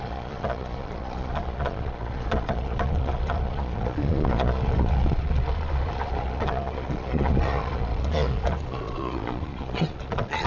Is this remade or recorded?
remade